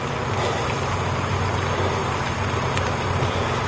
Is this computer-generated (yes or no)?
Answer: no